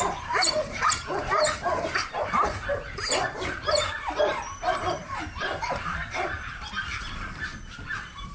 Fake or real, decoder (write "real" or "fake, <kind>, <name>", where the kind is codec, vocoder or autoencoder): fake, vocoder, BigVGAN v2